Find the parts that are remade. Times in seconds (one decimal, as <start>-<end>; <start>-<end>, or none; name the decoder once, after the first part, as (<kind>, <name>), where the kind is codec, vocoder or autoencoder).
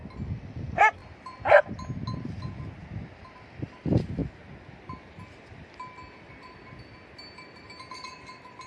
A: none